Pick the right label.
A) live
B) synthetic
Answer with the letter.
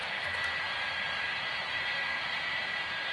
A